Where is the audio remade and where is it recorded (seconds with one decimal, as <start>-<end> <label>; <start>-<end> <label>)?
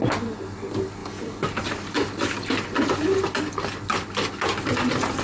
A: 0.0-5.2 recorded